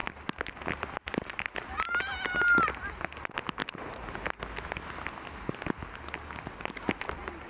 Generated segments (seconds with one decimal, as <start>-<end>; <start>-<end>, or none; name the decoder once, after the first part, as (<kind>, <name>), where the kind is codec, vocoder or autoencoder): none